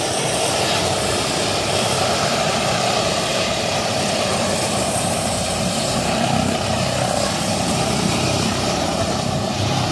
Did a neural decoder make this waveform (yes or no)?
yes